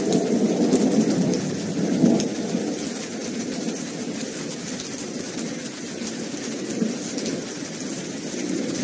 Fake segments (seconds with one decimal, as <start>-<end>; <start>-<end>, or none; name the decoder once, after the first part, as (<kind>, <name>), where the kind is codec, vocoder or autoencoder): none

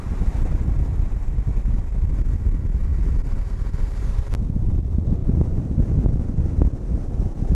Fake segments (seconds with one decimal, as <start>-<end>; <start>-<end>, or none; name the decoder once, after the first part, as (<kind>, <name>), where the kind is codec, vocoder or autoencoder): 2.9-4.3 (vocoder, BigVGAN v2); 5.2-6.4

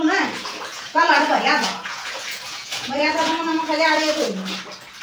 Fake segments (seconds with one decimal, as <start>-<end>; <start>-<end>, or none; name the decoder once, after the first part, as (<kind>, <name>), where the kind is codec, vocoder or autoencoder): 0.7-3.7 (vocoder, Vocos)

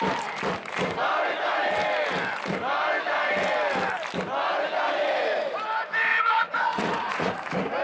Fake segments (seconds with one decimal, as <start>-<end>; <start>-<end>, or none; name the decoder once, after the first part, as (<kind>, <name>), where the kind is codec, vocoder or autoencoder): 6.1-7.3 (vocoder, Vocos)

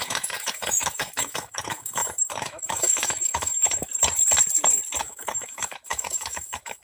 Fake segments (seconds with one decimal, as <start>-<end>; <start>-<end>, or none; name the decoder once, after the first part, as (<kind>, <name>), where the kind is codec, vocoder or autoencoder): 0.0-3.9 (autoencoder, DAC-VAE); 5.0-6.8

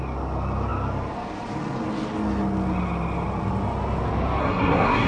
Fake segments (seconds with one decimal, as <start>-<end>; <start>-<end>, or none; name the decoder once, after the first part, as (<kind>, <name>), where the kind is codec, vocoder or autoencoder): 4.4-5.1 (codec, SNAC)